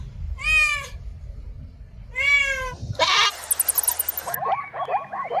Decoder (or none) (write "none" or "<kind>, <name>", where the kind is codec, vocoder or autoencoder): none